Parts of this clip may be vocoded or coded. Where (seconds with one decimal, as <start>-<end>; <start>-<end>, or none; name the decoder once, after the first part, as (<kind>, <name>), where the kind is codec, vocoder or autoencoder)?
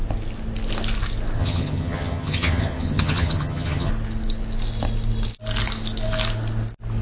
1.4-3.9 (vocoder, HiFi-GAN)